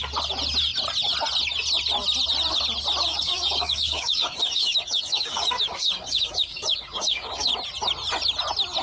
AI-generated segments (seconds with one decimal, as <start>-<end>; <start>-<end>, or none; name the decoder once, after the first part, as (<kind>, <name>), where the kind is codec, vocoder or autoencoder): 3.1-7.5 (codec, DAC)